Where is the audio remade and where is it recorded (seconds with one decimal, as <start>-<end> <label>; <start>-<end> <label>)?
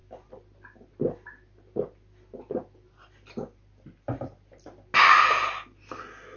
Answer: 0.0-6.4 recorded